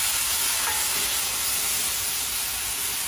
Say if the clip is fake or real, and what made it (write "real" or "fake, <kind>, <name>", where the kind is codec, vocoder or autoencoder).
real